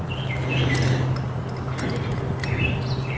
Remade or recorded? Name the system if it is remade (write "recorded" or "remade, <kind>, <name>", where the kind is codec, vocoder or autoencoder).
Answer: recorded